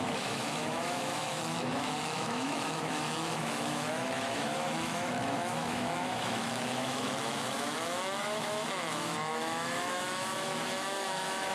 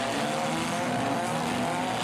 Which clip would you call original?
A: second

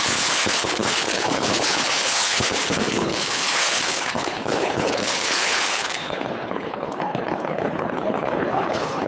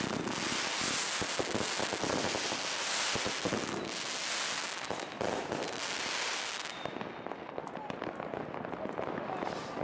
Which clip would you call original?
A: second